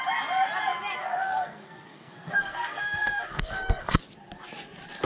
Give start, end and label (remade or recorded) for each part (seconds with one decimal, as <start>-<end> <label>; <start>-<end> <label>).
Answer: 0.0-1.0 recorded; 1.0-4.0 remade; 4.0-5.0 recorded